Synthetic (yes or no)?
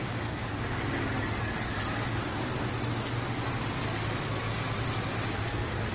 no